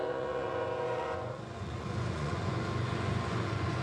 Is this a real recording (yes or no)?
no